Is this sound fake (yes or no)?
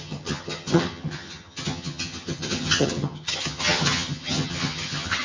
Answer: yes